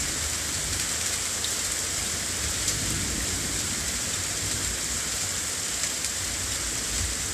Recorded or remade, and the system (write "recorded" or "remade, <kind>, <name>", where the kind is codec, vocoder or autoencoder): remade, vocoder, BigVGAN v2